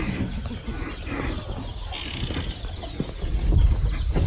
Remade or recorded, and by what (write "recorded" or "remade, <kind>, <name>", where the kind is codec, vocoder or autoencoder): recorded